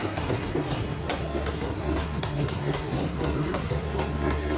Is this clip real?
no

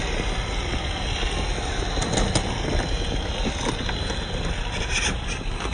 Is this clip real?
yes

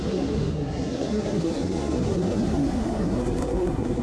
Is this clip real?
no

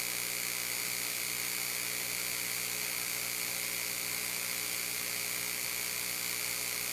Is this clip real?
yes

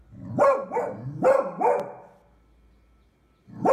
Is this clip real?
yes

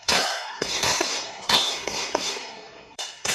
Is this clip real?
no